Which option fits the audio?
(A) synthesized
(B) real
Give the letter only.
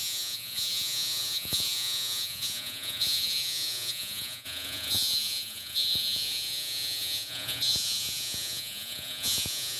A